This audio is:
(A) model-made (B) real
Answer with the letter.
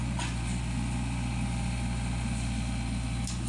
B